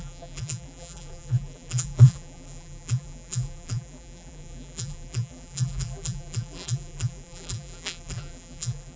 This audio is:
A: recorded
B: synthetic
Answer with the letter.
B